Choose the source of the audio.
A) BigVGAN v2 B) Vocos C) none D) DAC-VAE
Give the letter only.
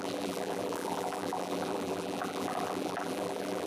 A